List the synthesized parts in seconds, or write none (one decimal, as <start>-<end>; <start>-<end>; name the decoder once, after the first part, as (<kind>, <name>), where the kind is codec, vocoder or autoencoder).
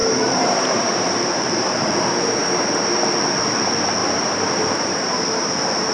0.0-1.8 (vocoder, BigVGAN v2); 4.0-5.2